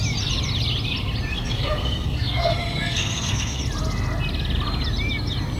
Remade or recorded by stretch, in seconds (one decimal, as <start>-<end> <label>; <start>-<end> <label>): 0.0-1.3 recorded; 1.3-3.6 remade; 3.6-5.6 recorded